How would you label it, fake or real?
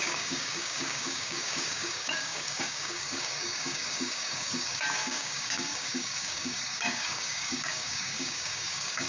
fake